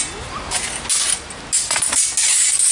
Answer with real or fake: real